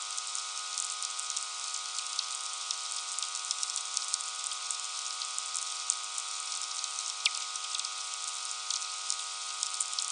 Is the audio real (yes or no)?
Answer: yes